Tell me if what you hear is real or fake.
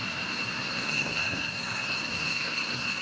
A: fake